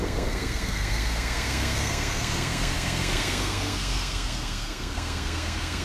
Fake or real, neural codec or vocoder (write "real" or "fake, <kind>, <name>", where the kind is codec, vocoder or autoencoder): fake, codec, SNAC